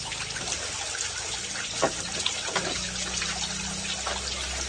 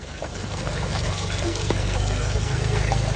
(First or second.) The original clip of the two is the first